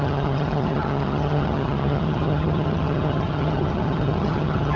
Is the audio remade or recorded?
remade